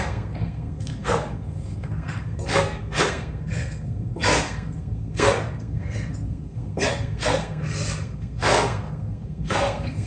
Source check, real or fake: fake